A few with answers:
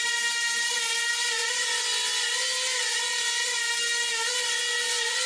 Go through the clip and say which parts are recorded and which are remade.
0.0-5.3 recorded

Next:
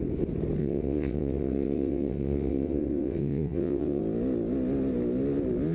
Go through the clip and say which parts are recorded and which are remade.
0.0-0.6 recorded; 0.6-4.0 remade; 4.0-5.7 recorded

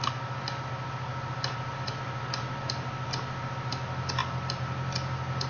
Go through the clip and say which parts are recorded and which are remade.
0.0-5.5 recorded